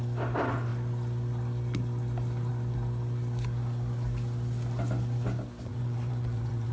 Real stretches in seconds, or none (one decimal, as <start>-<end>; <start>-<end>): 0.0-5.7